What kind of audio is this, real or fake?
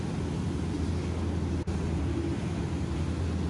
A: real